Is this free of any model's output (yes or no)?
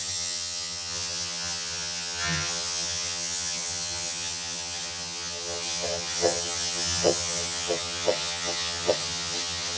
no